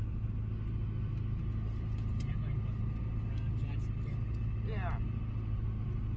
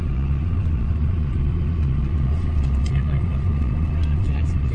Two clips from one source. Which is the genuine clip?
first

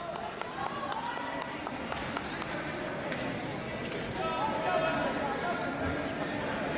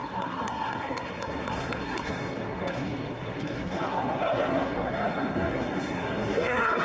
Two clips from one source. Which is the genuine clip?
first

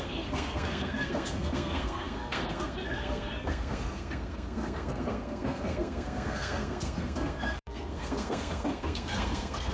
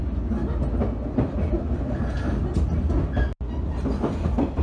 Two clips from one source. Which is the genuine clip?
second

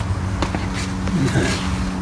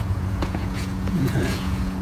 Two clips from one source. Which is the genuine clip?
first